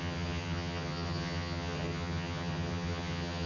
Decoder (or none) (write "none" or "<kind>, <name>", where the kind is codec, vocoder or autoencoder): vocoder, HiFi-GAN